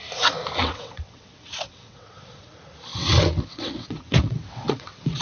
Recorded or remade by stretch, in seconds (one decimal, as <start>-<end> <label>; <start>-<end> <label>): 0.0-0.6 recorded; 0.6-2.5 remade; 2.5-2.9 recorded; 2.9-5.2 remade